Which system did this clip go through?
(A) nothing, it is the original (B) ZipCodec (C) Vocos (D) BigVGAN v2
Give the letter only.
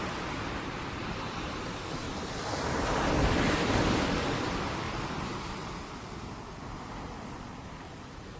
D